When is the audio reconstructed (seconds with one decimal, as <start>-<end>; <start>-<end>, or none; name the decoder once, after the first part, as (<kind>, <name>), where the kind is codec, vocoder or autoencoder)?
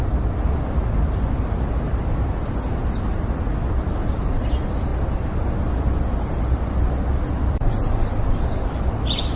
none